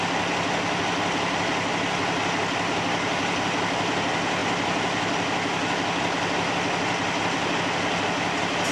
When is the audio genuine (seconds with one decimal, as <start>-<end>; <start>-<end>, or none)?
0.0-8.7